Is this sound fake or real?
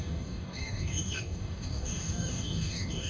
fake